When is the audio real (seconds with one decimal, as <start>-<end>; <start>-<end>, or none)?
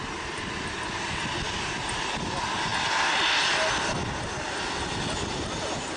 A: 0.0-6.0